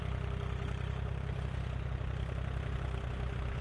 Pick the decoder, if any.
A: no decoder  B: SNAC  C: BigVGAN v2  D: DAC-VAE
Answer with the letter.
A